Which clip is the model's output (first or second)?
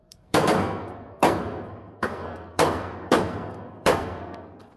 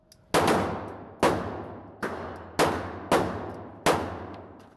first